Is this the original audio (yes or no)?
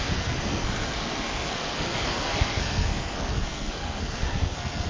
no